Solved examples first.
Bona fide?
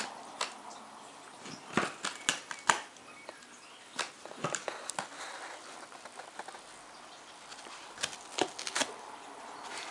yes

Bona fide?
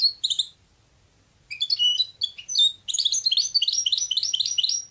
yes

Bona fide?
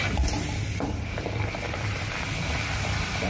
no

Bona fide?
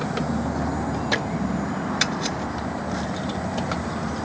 yes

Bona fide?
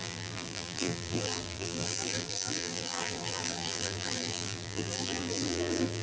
no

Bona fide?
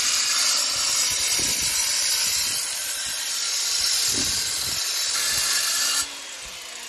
no